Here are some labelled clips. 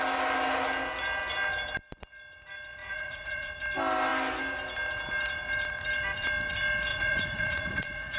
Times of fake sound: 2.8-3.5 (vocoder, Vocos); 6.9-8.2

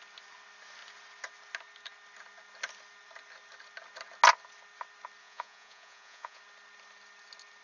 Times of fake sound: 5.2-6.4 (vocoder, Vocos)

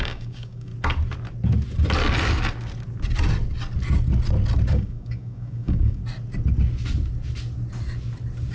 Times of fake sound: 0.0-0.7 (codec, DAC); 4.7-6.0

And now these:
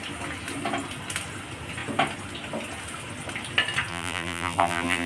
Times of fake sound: 3.9-5.1 (vocoder, BigVGAN v2)